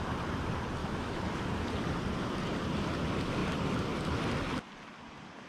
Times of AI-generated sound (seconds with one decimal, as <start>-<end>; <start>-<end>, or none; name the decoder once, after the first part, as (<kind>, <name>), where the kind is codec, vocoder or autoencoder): 0.8-1.4 (autoencoder, DAC-VAE)